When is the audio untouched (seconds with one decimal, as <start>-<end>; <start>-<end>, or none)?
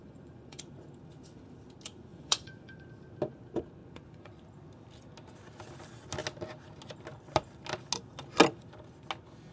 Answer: 0.6-2.1; 2.9-3.8; 4.4-9.5